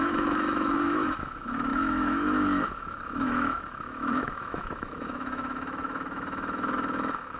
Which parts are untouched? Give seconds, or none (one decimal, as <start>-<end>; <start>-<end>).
none